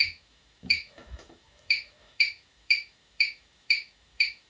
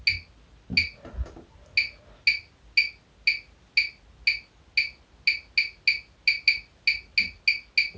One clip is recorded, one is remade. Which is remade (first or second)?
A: first